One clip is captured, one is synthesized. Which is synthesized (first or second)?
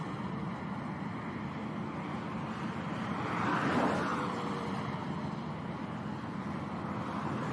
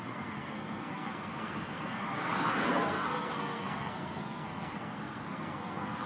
second